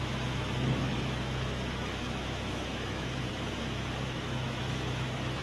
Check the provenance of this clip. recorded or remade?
remade